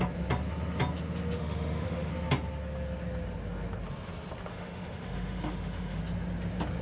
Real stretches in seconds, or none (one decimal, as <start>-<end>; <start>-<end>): 0.0-1.4; 2.1-4.5; 6.0-6.8